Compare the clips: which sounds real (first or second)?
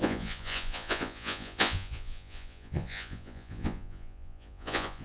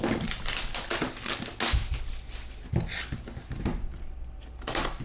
second